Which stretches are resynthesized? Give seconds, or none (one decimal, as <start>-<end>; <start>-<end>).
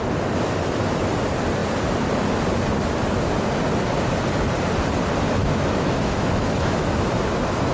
5.4-6.9